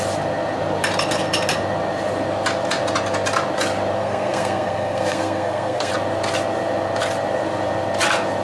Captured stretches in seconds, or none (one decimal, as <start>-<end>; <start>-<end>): 0.0-4.0; 5.9-8.4